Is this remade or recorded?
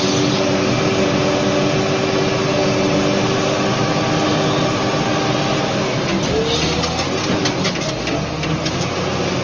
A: recorded